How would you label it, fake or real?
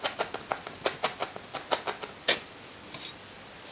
real